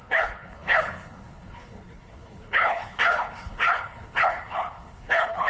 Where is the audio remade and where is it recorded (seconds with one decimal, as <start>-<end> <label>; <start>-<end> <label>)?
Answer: 0.0-5.5 remade